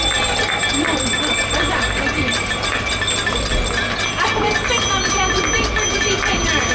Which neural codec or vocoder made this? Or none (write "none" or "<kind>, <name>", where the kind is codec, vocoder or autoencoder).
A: none